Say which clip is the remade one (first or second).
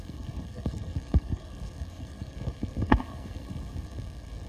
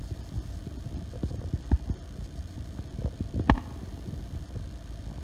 first